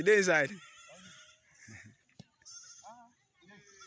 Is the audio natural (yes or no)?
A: yes